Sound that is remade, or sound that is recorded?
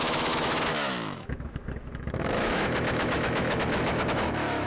remade